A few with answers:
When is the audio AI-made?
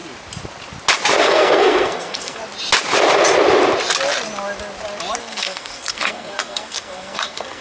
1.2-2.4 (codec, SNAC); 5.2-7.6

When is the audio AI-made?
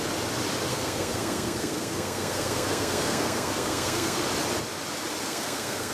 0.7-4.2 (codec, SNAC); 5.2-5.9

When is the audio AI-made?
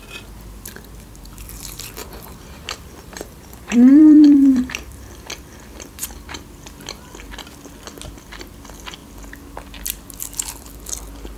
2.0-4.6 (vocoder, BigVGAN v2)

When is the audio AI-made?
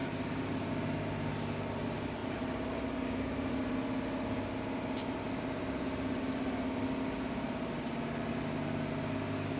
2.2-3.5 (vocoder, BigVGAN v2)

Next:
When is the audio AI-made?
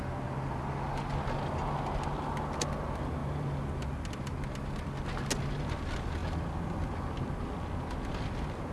none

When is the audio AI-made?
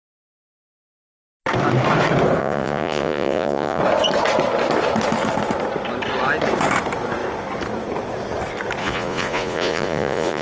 2.4-3.8 (vocoder, Vocos); 8.8-10.4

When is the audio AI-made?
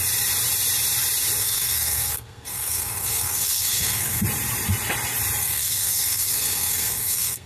1.4-4.2 (codec, SNAC); 5.4-7.5